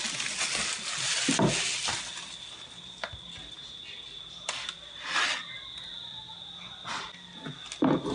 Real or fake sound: real